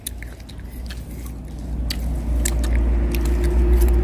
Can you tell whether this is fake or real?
real